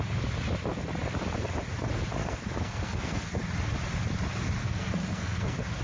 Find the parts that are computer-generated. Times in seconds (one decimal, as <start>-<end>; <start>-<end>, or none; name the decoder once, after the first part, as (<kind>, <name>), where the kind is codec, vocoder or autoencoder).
2.2-3.4 (codec, SNAC); 4.6-5.8